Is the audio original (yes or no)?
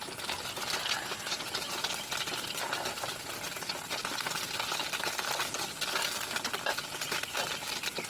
yes